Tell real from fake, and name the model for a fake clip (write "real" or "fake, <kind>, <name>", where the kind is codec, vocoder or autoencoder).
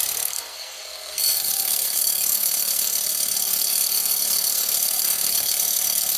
fake, codec, SNAC